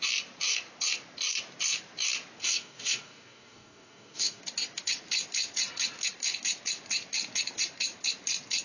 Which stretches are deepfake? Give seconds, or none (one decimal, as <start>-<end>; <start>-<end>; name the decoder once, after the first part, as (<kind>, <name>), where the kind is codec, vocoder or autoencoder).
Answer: 2.4-4.4 (codec, DAC)